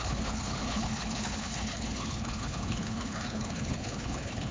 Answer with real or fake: fake